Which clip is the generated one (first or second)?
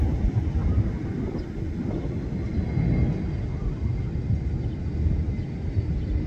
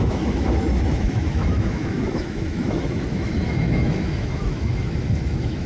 second